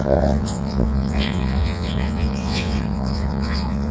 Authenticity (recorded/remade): remade